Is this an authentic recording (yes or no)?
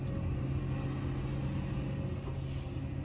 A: yes